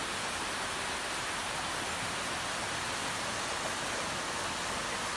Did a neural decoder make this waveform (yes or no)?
no